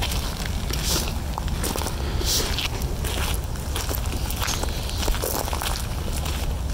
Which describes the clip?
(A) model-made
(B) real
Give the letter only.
B